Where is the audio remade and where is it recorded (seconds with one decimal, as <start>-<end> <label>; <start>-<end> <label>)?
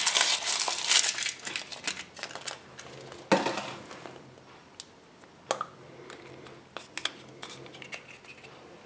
0.0-8.9 recorded